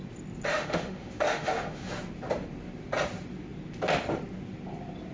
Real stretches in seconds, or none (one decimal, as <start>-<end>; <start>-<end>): 0.0-0.5; 1.9-5.1